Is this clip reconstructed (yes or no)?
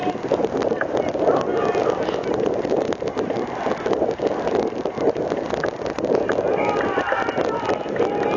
no